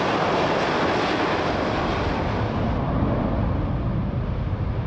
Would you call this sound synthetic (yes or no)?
no